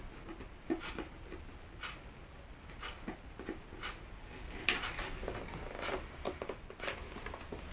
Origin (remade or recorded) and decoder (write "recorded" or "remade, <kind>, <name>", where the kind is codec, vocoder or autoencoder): recorded